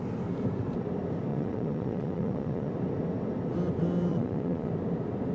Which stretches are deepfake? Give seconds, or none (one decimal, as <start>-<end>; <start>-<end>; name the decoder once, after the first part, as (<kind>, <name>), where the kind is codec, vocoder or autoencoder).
1.3-2.7 (vocoder, Vocos); 4.1-4.7